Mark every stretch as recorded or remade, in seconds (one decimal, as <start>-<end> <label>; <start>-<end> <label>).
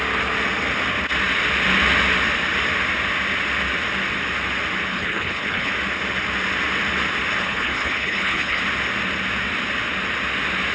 0.0-4.9 recorded; 4.9-5.7 remade; 5.7-7.4 recorded; 7.4-8.6 remade; 8.6-10.7 recorded